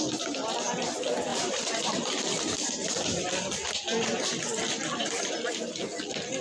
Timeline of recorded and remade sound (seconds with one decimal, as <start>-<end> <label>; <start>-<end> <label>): 0.0-1.3 recorded; 1.3-1.8 remade; 1.8-2.8 recorded; 2.8-3.3 remade; 3.3-6.4 recorded